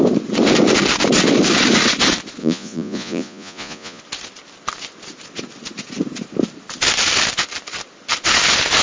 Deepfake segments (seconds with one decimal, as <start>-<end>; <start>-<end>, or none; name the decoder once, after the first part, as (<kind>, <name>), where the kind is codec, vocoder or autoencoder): 2.4-4.0 (vocoder, Vocos)